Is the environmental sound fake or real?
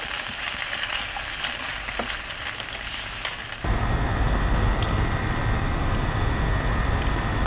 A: real